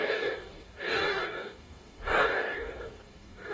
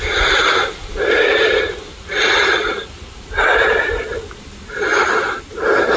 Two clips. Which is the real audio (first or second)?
second